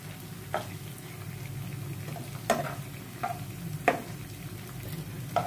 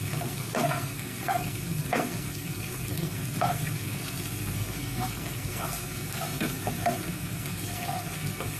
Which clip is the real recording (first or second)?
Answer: first